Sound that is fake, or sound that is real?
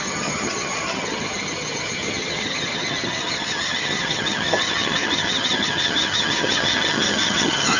fake